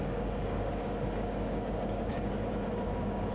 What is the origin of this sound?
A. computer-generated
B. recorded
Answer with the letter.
A